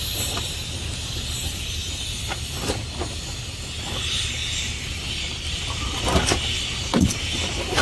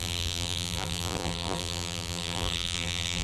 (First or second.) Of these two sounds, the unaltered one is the first